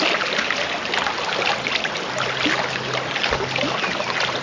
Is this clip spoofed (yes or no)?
no